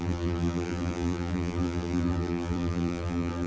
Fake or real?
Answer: fake